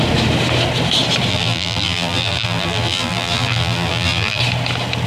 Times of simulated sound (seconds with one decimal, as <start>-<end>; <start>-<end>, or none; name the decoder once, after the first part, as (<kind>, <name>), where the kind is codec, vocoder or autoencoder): 1.3-4.4 (vocoder, BigVGAN v2)